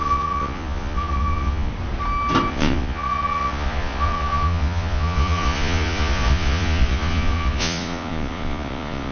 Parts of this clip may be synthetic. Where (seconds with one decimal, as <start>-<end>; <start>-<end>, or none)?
0.0-1.7; 2.5-9.1